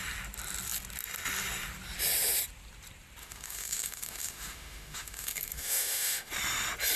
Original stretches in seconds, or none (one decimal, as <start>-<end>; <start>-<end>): 0.0-3.2; 6.3-7.0